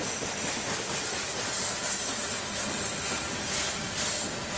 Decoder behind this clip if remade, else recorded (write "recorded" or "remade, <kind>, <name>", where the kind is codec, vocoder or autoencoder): recorded